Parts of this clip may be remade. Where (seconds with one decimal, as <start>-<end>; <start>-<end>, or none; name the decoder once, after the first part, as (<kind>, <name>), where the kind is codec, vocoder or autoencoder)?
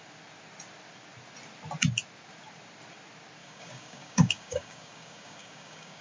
3.4-6.0 (codec, DAC)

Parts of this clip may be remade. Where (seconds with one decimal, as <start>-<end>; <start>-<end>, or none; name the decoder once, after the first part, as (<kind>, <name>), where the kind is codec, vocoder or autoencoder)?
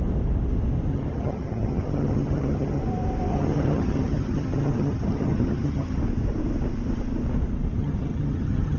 0.9-2.8 (vocoder, HiFi-GAN); 3.3-6.0; 7.8-8.8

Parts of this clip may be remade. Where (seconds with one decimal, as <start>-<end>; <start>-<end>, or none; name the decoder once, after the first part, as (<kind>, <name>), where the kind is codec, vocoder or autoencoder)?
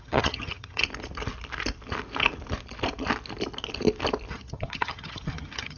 0.0-0.8 (vocoder, HiFi-GAN); 4.3-5.8